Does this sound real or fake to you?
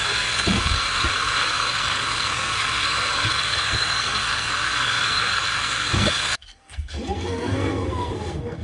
fake